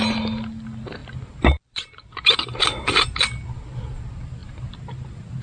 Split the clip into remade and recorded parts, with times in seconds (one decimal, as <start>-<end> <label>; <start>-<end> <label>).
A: 0.0-5.4 recorded